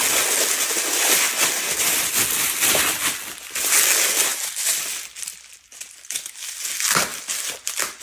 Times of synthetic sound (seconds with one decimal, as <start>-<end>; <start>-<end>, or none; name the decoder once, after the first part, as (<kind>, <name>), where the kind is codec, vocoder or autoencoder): none